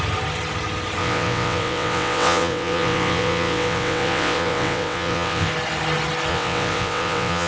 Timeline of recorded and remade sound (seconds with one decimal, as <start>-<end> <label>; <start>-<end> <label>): 0.0-1.0 recorded; 1.0-5.5 remade; 5.5-6.3 recorded; 6.3-7.5 remade